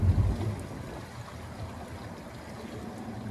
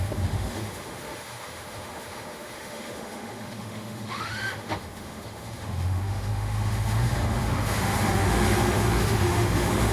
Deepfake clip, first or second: second